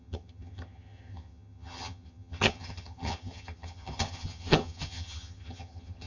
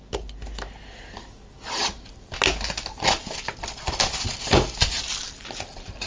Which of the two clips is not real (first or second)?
first